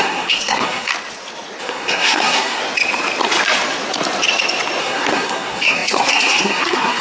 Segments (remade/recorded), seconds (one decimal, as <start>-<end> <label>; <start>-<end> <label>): 0.0-0.9 remade; 0.9-1.6 recorded; 1.6-2.6 remade; 2.6-4.8 recorded; 4.8-7.0 remade

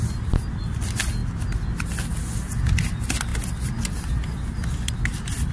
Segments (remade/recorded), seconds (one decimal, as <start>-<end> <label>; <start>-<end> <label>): 0.0-5.5 recorded